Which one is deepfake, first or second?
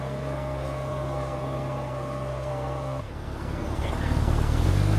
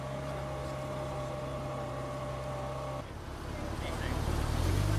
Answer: first